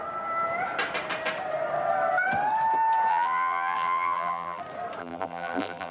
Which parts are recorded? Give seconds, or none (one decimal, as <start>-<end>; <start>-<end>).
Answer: 0.0-3.1; 4.6-5.0